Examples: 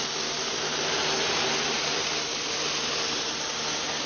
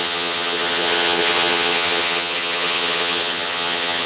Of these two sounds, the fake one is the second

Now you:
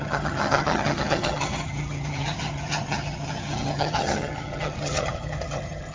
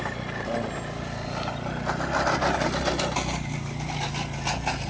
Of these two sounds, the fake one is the first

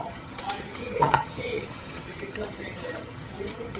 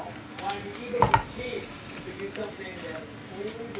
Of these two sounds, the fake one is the first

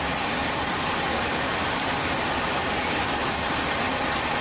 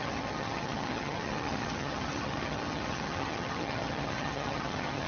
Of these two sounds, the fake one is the second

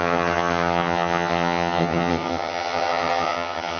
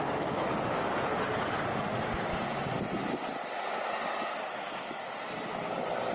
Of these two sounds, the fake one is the first